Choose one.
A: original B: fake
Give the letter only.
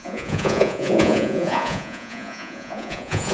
B